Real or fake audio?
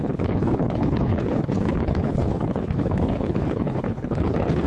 fake